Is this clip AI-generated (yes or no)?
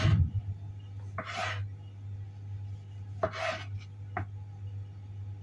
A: no